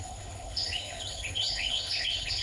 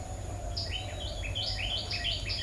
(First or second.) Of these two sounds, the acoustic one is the second